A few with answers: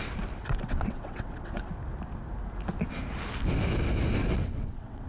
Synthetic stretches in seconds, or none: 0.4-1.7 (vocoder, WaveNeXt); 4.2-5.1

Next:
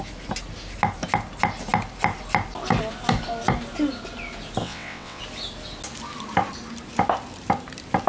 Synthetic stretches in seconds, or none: 4.6-5.2 (vocoder, WaveNeXt)

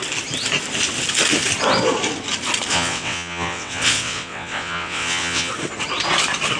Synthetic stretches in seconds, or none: 2.7-5.5 (vocoder, WaveNeXt)

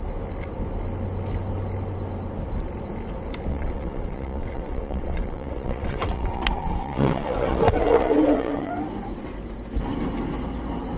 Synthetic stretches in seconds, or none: 3.5-8.7 (vocoder, WaveNeXt)

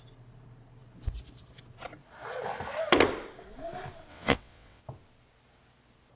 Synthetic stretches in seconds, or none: 4.1-4.8 (vocoder, WaveNeXt)

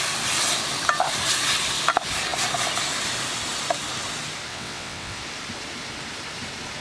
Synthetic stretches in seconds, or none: 4.5-5.2 (vocoder, WaveNeXt)

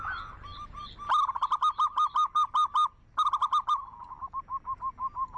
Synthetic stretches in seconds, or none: none